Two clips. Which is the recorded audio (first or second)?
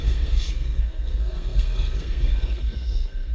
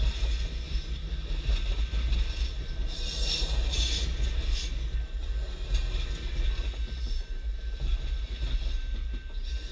second